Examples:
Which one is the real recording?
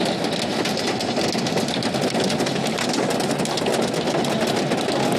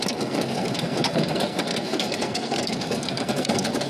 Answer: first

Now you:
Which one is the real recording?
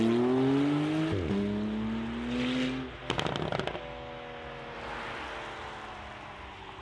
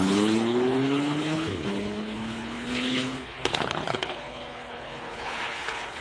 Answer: first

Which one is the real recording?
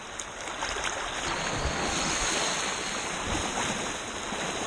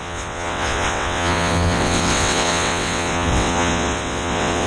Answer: first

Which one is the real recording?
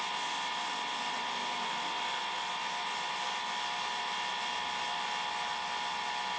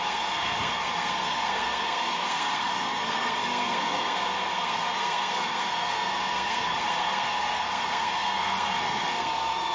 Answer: first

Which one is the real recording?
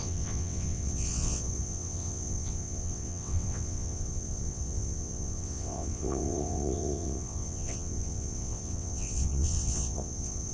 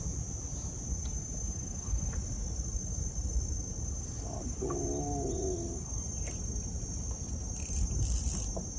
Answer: second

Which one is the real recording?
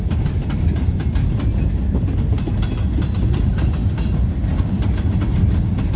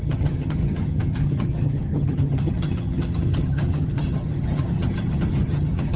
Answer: first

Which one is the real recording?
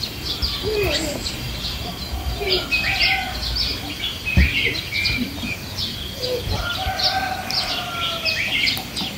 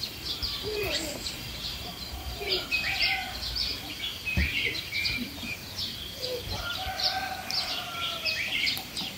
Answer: first